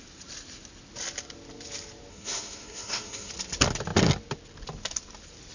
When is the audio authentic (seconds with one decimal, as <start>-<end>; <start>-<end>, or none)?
0.0-2.1; 3.3-5.5